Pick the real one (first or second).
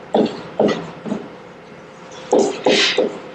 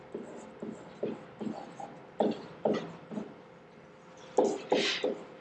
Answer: second